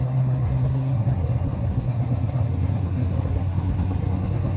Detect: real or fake fake